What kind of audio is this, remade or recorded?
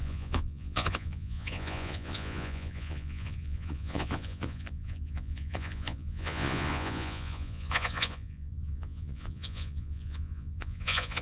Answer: remade